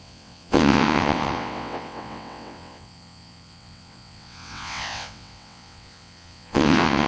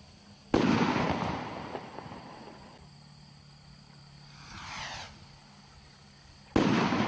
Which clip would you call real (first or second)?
second